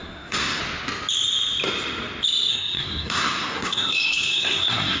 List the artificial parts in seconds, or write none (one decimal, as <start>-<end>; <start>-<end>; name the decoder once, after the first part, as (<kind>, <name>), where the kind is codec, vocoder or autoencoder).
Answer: 0.0-0.6 (codec, SNAC); 2.5-5.0